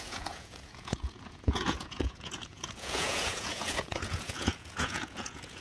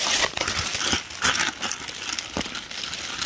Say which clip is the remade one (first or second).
first